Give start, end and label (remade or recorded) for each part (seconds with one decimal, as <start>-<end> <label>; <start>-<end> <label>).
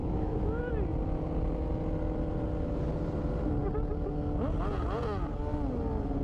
0.0-0.7 remade; 0.7-6.2 recorded